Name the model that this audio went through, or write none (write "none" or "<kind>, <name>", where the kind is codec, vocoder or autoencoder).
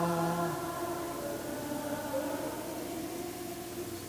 none